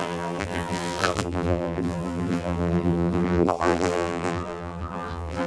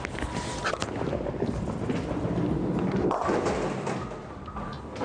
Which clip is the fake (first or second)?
first